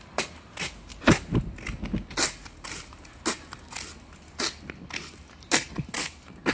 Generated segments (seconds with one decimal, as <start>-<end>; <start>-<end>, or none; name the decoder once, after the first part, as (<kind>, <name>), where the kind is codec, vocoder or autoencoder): none